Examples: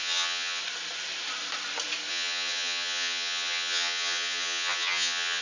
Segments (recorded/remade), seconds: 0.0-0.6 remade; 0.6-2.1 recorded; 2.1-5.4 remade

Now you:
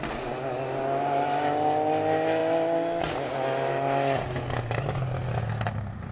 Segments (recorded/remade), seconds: 0.0-6.1 recorded

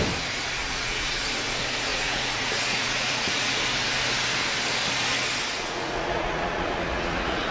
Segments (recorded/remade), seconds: 0.0-0.6 recorded; 0.6-1.2 remade; 1.2-1.9 recorded; 1.9-3.6 remade; 3.6-5.5 recorded; 5.5-7.5 remade

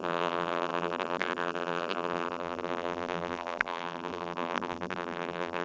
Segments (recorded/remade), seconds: 0.0-5.6 remade

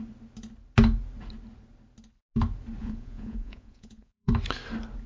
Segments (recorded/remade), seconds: 0.0-2.8 recorded; 2.8-4.3 remade; 4.3-5.1 recorded

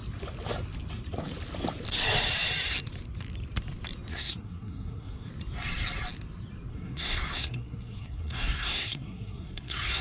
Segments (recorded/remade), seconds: 0.0-4.1 recorded; 4.1-5.3 remade; 5.3-6.7 recorded; 6.7-10.0 remade